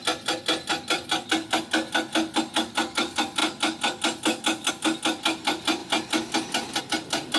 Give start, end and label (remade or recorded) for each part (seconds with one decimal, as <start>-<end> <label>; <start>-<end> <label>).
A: 0.0-7.4 recorded